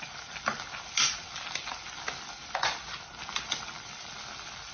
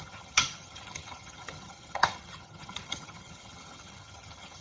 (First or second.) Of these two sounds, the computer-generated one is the second